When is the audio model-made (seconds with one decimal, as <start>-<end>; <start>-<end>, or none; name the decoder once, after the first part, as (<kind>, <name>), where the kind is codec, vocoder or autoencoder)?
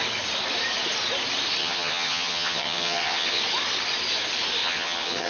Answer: 1.6-3.4 (vocoder, HiFi-GAN); 4.6-5.3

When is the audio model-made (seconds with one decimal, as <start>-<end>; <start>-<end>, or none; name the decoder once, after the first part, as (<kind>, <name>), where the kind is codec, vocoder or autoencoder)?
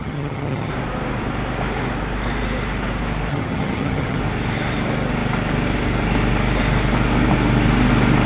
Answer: 0.0-0.7 (vocoder, HiFi-GAN); 3.3-4.2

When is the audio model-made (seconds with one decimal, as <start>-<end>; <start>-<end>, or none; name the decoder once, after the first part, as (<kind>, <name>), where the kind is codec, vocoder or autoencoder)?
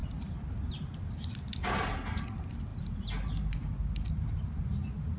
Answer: none